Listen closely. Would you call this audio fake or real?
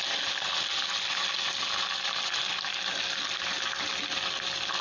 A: real